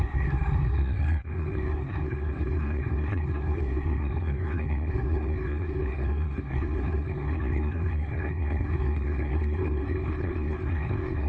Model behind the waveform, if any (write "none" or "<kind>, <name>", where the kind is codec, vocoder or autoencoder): codec, SNAC